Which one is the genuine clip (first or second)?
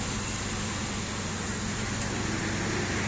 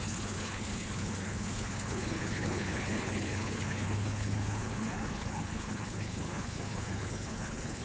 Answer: first